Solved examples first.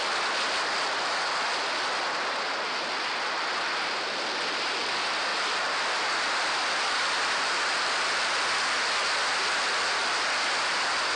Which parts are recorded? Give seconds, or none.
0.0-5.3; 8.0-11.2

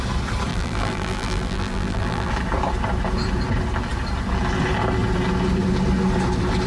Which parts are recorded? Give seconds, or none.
0.0-0.5; 2.3-6.7